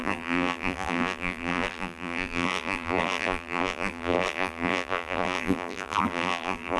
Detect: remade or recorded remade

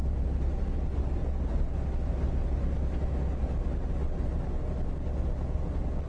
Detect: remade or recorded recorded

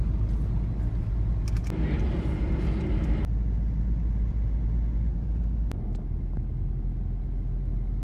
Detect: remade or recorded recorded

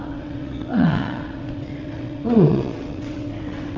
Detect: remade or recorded remade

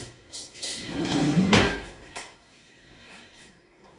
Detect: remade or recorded remade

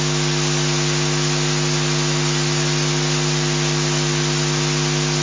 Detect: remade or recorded recorded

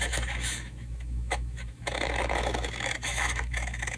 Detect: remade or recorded remade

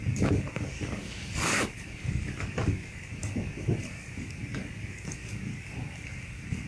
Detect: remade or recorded remade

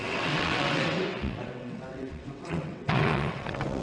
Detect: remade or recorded remade